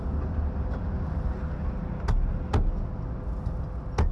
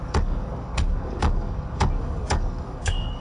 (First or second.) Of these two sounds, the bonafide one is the first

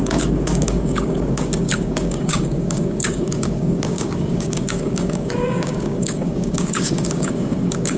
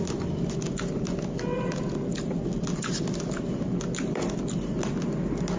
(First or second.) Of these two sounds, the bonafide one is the second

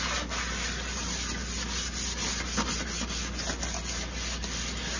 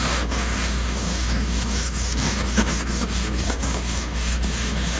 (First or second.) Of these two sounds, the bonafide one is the first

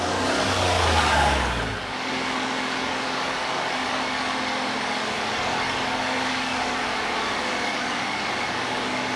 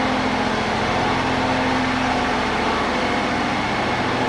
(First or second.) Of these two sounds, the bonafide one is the second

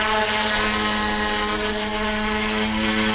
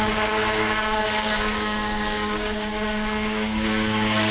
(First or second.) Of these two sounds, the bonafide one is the first